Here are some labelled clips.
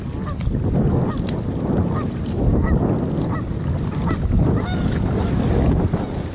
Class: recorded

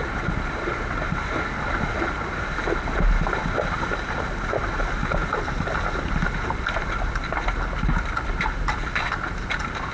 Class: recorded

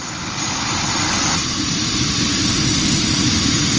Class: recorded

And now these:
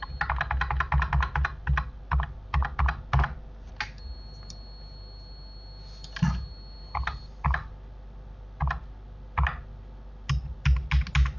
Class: recorded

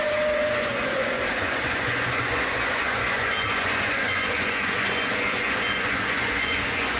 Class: remade